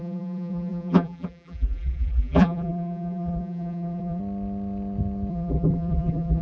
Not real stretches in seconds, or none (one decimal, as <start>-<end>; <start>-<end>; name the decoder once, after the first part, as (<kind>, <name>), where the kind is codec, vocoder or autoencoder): 0.0-4.2 (vocoder, BigVGAN v2); 5.3-6.4